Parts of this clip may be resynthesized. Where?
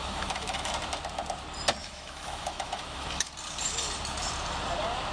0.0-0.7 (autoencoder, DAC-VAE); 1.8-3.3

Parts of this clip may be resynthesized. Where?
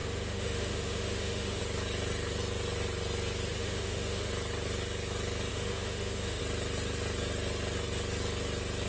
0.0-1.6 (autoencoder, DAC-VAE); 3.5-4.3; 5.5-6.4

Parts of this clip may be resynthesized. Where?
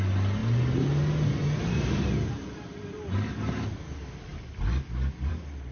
none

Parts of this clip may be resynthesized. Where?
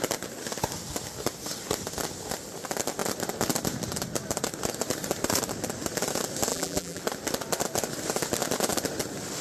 6.5-7.0 (vocoder, BigVGAN v2)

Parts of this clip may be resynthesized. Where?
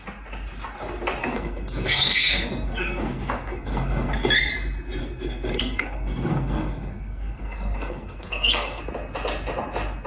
1.2-4.5 (codec, SNAC); 5.0-8.8